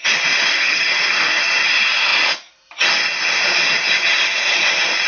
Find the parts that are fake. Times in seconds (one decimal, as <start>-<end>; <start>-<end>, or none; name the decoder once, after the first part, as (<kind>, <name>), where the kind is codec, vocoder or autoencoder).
0.5-1.4 (codec, SNAC)